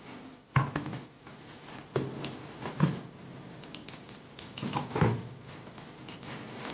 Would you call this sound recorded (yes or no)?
yes